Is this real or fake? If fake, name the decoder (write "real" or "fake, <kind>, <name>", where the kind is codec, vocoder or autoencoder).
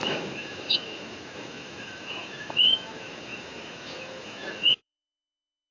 fake, autoencoder, DAC-VAE